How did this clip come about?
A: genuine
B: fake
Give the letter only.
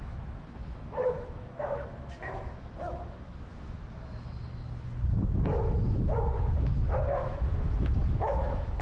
B